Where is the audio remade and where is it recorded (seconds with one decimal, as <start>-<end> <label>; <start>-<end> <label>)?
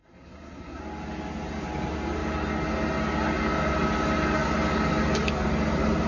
0.0-0.8 remade; 0.8-6.1 recorded